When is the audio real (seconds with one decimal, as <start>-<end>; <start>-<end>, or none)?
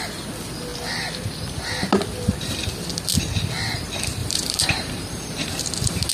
0.0-4.2